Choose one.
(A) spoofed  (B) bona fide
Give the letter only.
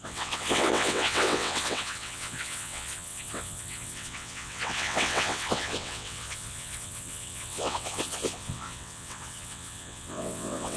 A